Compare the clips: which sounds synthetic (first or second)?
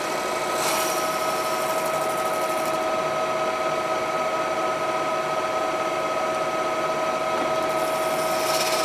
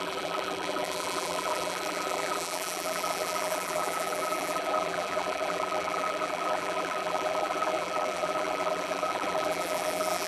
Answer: second